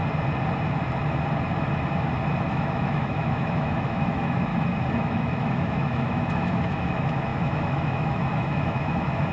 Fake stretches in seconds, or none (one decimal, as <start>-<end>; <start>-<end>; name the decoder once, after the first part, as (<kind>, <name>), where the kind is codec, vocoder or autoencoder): 2.5-4.5 (autoencoder, DAC-VAE); 5.0-9.3